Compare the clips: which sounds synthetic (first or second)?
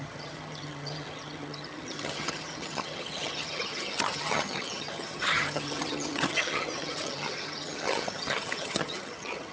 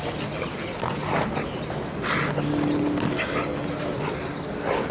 first